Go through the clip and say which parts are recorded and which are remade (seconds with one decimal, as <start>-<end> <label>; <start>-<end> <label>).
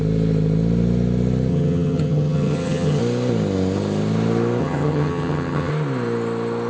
0.0-1.5 recorded; 1.5-3.0 remade; 3.0-4.6 recorded; 4.6-5.7 remade; 5.7-6.7 recorded